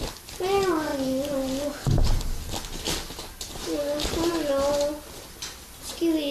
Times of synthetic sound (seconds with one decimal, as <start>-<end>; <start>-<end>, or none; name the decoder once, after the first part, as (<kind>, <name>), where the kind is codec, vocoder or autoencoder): none